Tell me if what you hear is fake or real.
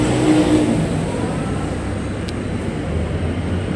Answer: real